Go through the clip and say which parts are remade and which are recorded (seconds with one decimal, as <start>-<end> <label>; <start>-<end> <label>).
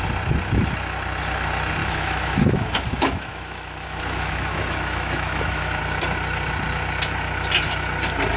0.0-1.8 recorded; 1.8-5.8 remade; 5.8-8.4 recorded